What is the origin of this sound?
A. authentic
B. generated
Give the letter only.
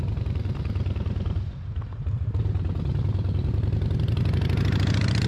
A